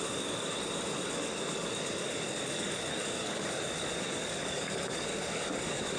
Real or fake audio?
fake